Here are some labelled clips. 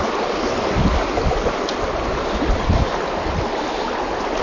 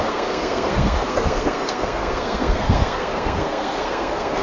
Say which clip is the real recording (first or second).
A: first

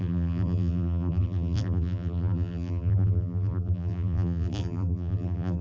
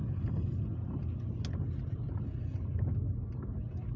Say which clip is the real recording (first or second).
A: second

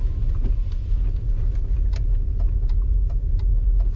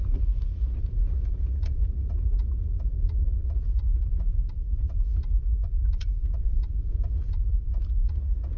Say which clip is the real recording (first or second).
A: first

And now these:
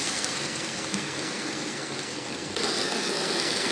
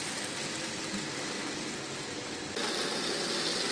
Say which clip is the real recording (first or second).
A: second